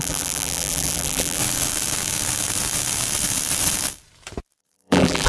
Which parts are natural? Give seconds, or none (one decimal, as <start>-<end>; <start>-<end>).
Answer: 1.4-4.6